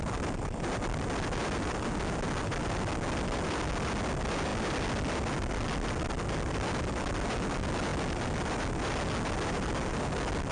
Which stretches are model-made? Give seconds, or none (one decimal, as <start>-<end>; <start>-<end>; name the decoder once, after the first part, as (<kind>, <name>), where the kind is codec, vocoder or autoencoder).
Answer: none